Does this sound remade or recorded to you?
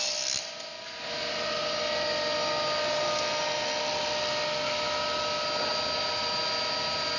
recorded